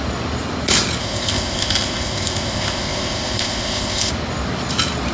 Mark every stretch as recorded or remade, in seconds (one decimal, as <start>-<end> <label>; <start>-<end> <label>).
0.0-1.0 recorded; 1.0-4.1 remade; 4.1-5.1 recorded